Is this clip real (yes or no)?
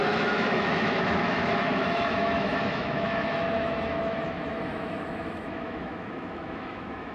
no